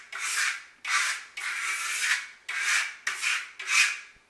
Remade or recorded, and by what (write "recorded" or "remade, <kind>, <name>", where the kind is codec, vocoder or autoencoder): recorded